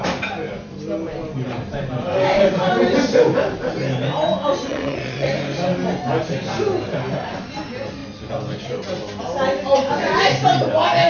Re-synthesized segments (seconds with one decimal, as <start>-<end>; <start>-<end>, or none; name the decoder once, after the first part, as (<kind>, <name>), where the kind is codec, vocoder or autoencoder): 4.7-5.3 (vocoder, Vocos)